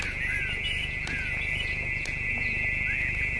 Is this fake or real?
real